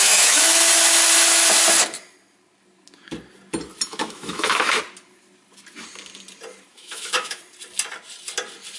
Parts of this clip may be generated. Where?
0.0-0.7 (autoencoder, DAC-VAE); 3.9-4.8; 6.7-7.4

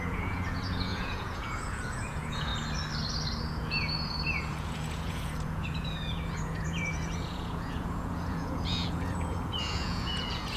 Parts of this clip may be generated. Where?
0.0-2.5 (vocoder, Vocos); 3.4-10.6